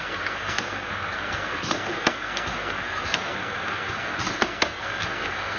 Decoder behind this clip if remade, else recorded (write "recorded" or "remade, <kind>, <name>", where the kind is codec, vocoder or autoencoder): remade, codec, SNAC